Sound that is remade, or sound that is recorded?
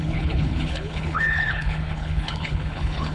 remade